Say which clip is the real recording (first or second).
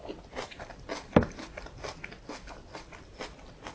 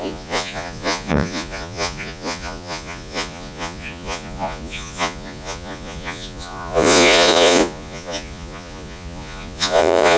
first